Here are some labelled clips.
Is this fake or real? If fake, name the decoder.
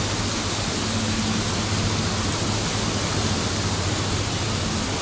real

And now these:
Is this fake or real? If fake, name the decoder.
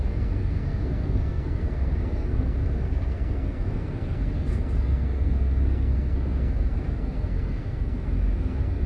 fake, codec, SNAC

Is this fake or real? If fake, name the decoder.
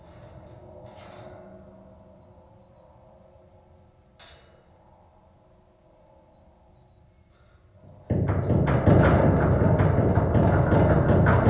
real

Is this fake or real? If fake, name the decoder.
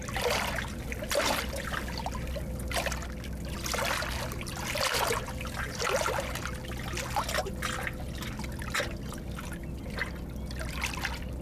real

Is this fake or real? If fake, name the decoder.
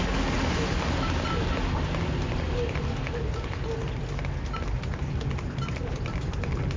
real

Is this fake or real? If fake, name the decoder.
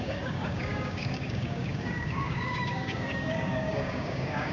fake, codec, DAC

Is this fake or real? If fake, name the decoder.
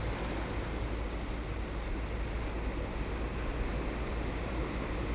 real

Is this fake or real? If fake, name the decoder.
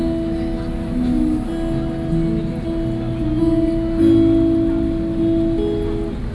real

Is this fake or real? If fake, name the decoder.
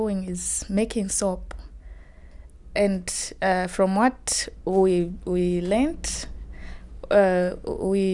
real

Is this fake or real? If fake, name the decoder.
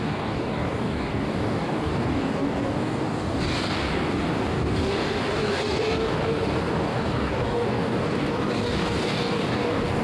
fake, codec, DAC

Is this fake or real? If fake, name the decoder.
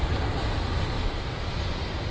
real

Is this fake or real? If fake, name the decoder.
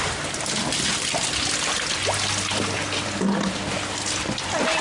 real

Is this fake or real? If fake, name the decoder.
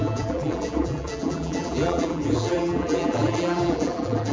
fake, vocoder, BigVGAN v2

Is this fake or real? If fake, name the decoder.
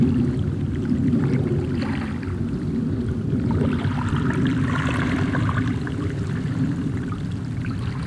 fake, vocoder, BigVGAN v2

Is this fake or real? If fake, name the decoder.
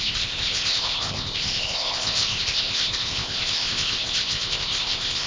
fake, codec, ZipCodec